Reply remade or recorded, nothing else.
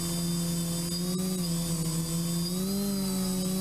recorded